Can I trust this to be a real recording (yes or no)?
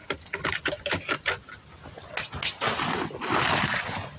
yes